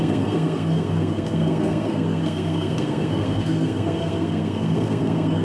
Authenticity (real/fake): fake